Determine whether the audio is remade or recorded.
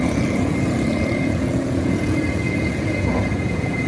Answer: remade